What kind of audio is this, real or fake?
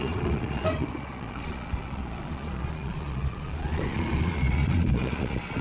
fake